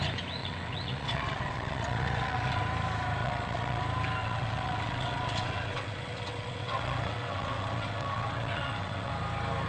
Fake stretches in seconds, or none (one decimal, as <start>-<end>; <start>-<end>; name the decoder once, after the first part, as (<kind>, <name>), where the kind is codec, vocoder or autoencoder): 0.4-2.6 (vocoder, WaveNeXt); 3.2-3.8; 4.2-9.1